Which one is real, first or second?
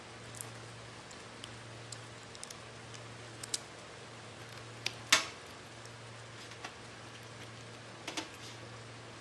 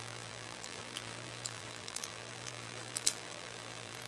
first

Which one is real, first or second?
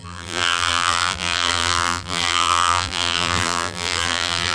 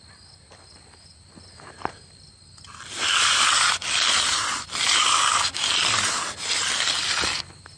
second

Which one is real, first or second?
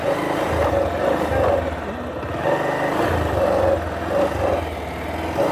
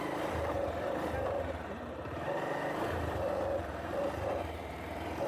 first